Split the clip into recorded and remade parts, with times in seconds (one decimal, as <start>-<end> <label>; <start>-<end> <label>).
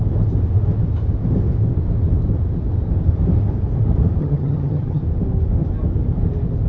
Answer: 0.0-4.2 recorded; 4.2-5.0 remade; 5.0-6.7 recorded